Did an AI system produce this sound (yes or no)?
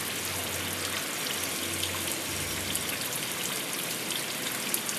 no